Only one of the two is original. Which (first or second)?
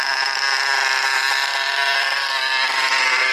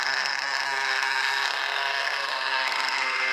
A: first